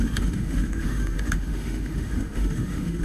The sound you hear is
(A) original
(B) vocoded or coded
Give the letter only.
B